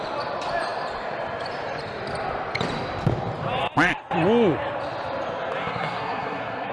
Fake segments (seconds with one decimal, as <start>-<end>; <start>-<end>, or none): 5.6-6.7